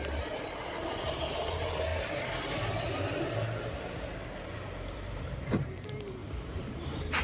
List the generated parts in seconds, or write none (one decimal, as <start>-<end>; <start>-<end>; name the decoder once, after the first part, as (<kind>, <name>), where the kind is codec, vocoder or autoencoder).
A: 0.0-1.9 (vocoder, BigVGAN v2); 3.8-7.2